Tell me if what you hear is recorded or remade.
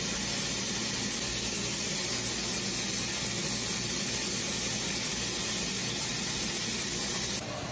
recorded